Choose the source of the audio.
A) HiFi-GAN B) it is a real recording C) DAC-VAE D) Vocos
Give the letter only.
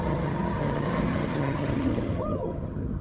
A